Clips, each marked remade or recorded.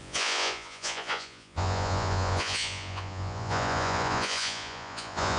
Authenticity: remade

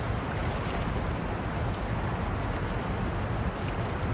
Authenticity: recorded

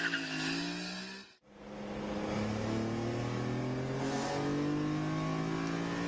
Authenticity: recorded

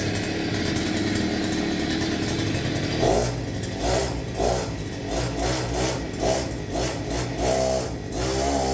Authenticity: recorded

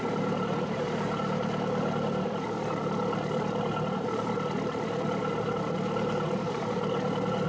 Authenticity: recorded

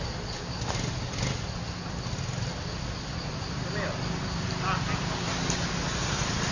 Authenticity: recorded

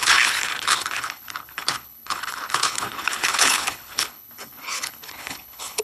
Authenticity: remade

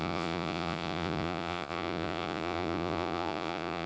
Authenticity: remade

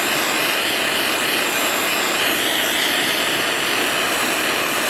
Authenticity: recorded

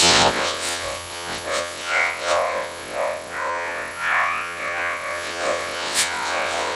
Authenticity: remade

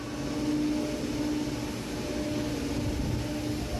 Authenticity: recorded